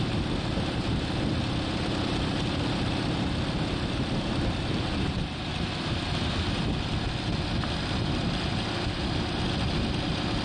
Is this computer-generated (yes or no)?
no